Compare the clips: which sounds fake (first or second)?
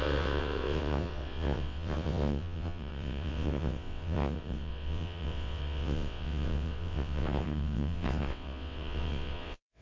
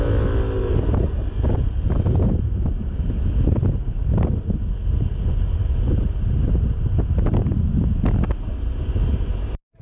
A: first